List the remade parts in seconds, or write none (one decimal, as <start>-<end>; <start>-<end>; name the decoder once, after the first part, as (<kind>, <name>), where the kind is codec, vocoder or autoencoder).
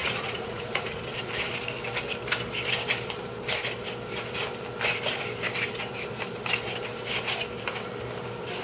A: 0.0-1.0 (vocoder, Vocos)